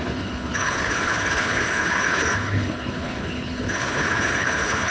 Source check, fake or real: fake